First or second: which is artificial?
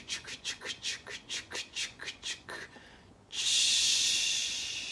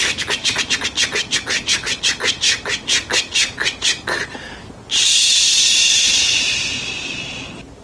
first